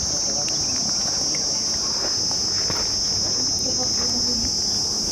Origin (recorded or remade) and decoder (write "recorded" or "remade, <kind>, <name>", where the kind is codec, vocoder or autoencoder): recorded